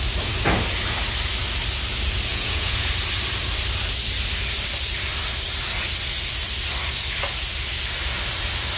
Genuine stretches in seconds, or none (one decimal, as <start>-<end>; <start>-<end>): 0.0-2.3; 2.9-8.8